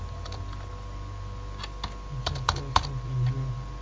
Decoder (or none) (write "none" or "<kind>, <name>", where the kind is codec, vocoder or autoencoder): none